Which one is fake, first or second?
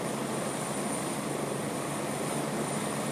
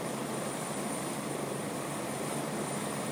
second